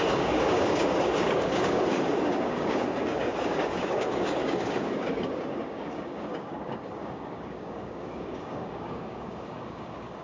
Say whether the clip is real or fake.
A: fake